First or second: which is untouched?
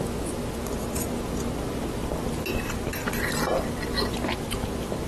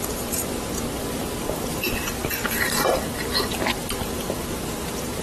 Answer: first